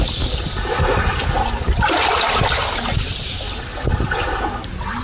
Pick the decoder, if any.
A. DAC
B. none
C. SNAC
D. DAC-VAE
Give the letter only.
B